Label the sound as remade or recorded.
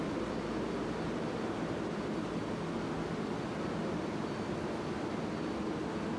recorded